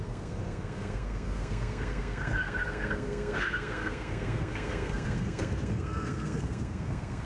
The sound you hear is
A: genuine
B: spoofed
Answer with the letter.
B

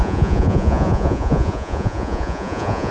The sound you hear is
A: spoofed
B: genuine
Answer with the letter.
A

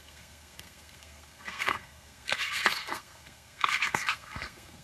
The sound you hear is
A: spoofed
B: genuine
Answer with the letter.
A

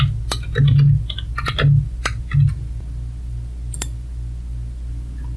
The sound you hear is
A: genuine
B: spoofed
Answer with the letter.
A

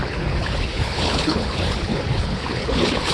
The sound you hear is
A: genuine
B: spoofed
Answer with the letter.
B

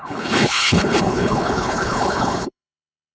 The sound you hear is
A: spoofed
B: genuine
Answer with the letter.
A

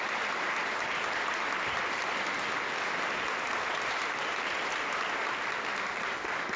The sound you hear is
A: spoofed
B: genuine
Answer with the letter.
B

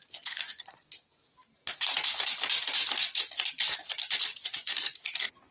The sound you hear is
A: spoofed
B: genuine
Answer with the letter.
B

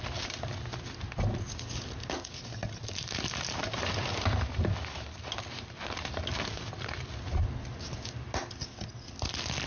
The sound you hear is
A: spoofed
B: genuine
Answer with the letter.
B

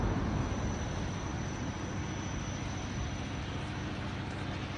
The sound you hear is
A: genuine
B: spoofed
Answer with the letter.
A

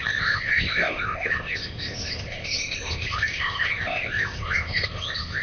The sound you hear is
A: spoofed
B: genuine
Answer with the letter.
A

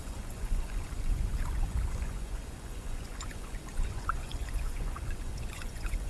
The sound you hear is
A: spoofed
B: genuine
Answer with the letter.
A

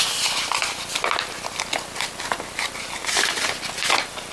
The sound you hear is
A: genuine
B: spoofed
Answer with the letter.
A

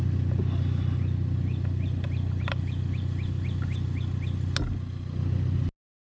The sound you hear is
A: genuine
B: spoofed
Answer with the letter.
A